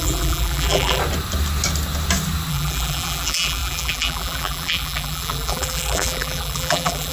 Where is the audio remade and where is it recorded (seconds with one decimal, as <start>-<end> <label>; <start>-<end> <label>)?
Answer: 0.0-1.0 remade; 1.0-2.5 recorded; 2.5-7.1 remade